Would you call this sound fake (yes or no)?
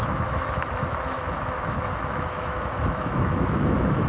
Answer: yes